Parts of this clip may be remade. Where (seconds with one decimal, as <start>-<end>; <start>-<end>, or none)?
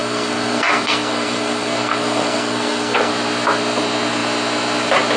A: 0.0-3.1